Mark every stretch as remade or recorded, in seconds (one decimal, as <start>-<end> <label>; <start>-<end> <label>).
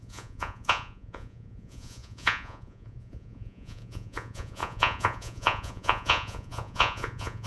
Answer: 0.0-7.5 remade